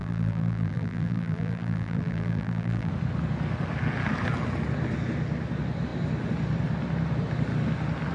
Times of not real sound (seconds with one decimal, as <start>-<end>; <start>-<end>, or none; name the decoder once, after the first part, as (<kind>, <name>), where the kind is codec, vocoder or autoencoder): 0.0-2.9 (vocoder, BigVGAN v2)